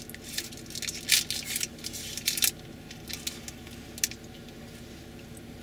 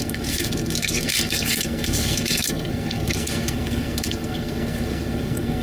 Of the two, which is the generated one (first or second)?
second